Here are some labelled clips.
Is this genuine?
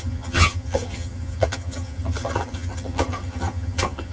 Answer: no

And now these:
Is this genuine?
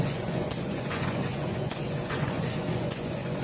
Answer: no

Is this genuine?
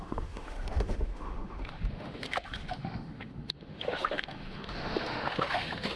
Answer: no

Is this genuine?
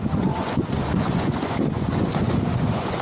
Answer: no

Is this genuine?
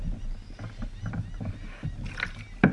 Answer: yes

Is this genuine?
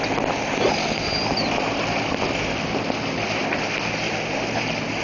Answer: yes